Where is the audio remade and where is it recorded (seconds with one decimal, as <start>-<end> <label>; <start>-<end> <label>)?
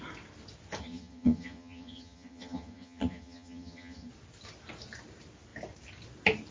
0.0-0.8 recorded; 0.8-4.1 remade; 4.1-6.5 recorded